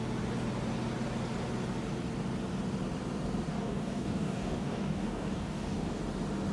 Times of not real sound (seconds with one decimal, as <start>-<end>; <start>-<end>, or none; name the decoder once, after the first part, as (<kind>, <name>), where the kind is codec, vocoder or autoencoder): 3.5-6.0 (codec, DAC)